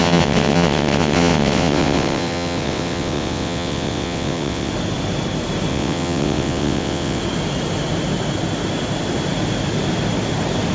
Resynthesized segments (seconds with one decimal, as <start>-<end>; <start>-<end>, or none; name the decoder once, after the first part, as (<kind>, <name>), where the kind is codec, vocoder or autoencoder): 0.0-4.7 (vocoder, WaveNeXt); 5.7-7.2